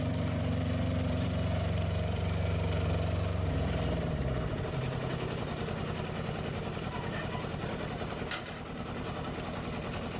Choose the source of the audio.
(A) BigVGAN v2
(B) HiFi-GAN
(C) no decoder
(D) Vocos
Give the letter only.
A